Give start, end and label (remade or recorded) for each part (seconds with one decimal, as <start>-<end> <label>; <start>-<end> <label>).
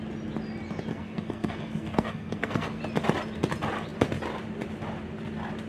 0.0-0.9 recorded; 0.9-2.8 remade; 2.8-5.7 recorded